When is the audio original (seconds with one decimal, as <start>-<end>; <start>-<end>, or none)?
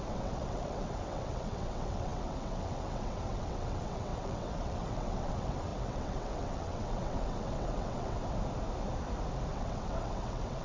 8.2-9.5